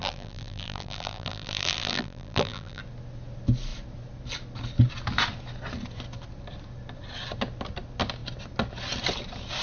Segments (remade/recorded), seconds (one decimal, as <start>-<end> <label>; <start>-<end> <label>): 0.0-2.8 remade; 2.8-9.6 recorded

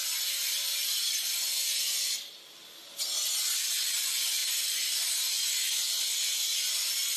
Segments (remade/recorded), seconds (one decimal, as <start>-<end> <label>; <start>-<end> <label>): 0.0-4.4 recorded; 4.4-5.1 remade; 5.1-7.2 recorded

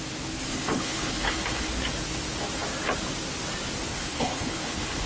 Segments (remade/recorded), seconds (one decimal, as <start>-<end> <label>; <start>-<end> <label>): 0.0-0.5 recorded; 0.5-1.7 remade; 1.7-3.9 recorded; 3.9-5.1 remade

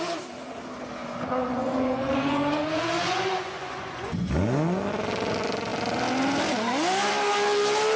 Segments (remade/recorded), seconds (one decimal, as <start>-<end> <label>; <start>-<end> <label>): 0.0-1.0 recorded; 1.0-4.3 remade; 4.3-8.0 recorded

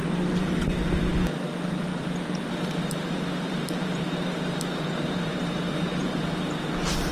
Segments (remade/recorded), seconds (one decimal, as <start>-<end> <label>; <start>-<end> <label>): 0.0-0.6 remade; 0.6-1.9 recorded; 1.9-2.4 remade; 2.4-2.8 recorded; 2.8-6.2 remade; 6.2-7.1 recorded

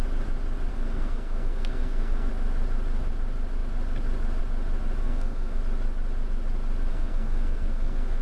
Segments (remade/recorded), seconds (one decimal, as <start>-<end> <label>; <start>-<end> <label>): 0.0-0.7 recorded; 0.7-2.3 remade; 2.3-5.0 recorded; 5.0-5.6 remade; 5.6-6.9 recorded; 6.9-8.2 remade